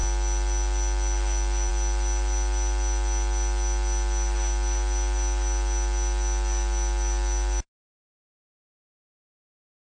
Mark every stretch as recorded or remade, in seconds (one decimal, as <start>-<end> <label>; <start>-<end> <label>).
0.0-9.9 recorded